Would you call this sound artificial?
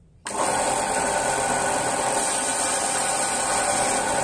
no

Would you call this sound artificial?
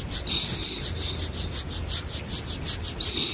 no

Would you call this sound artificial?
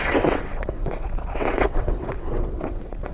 yes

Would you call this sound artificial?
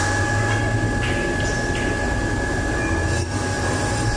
no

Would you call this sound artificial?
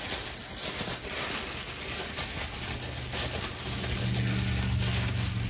no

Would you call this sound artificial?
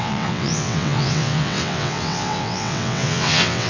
yes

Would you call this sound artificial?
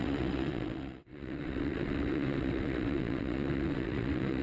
yes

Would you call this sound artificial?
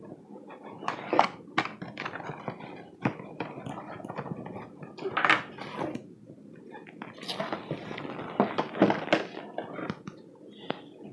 no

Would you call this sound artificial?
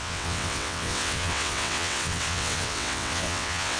yes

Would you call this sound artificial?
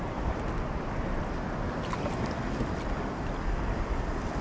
no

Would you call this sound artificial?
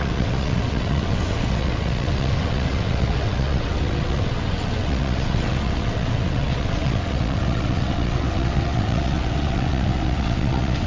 yes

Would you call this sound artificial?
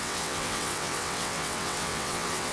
yes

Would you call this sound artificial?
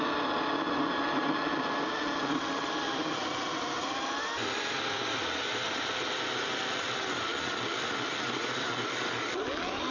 no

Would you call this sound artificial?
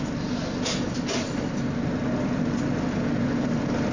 no